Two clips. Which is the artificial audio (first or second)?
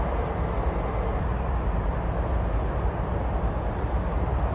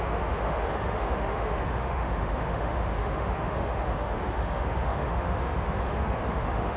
second